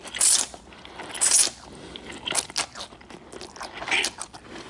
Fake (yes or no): no